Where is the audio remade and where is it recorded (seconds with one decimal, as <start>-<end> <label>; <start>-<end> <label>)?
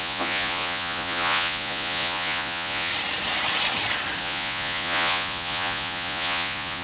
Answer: 0.0-2.9 remade; 2.9-4.2 recorded; 4.2-6.8 remade